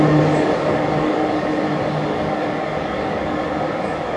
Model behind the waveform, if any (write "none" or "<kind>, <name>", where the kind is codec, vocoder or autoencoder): codec, DAC